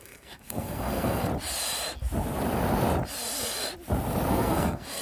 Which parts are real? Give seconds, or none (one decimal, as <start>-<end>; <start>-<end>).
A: 1.3-4.3